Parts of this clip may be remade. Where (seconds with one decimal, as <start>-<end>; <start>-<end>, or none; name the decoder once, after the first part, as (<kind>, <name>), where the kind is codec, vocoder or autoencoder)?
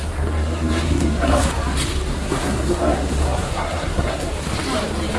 0.0-1.5 (codec, SNAC); 2.1-4.3